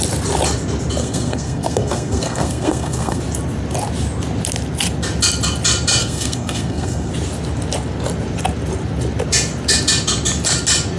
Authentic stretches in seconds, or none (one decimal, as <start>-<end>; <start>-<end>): 0.0-1.0; 3.2-6.0; 7.1-11.0